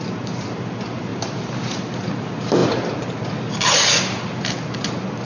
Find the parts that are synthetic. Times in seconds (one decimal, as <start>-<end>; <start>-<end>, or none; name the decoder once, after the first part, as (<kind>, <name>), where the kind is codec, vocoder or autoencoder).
1.1-2.1 (vocoder, BigVGAN v2)